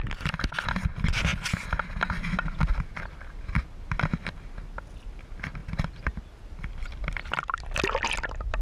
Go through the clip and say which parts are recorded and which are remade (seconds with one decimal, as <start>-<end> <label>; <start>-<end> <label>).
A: 0.0-8.6 recorded